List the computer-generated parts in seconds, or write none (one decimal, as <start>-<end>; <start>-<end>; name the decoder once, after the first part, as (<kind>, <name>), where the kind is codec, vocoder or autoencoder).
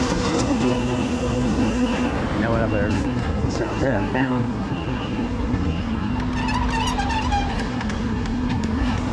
0.0-2.2 (codec, SNAC); 2.9-6.1; 7.5-9.1